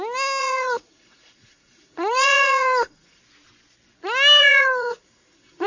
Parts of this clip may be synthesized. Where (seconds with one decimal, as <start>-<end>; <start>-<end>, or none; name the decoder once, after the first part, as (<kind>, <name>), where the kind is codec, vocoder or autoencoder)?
0.4-3.2 (vocoder, Vocos); 4.4-5.7